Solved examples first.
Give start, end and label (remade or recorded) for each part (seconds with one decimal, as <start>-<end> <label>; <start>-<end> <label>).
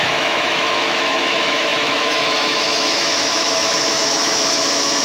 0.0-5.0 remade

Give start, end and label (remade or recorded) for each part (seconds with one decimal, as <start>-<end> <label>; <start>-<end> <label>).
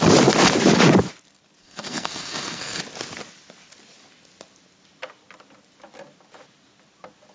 0.0-1.6 recorded; 1.6-2.8 remade; 2.8-7.3 recorded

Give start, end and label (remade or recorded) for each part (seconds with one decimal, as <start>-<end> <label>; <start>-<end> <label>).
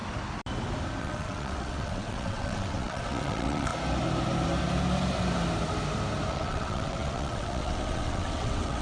0.0-1.0 recorded; 1.0-3.7 remade; 3.7-6.3 recorded; 6.3-8.8 remade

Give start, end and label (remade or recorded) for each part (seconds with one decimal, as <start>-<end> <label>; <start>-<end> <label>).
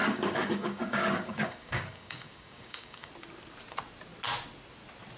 0.0-3.1 remade; 3.1-5.2 recorded